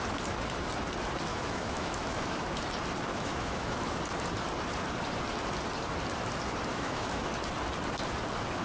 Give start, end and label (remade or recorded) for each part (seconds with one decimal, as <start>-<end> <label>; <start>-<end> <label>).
0.0-1.3 recorded; 1.3-2.6 remade; 2.6-3.1 recorded; 3.1-4.0 remade; 4.0-6.7 recorded; 6.7-7.3 remade; 7.3-8.6 recorded